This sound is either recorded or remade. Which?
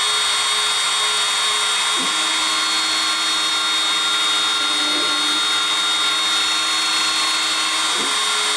recorded